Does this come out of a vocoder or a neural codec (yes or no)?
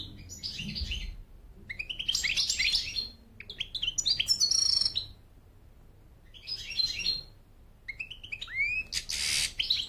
no